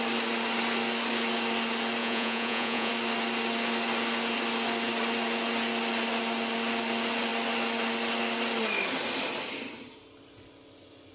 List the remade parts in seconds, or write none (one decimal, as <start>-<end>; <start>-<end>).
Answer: 2.0-2.9